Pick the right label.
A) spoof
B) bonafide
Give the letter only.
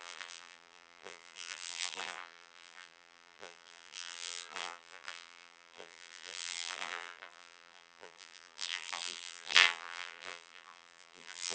A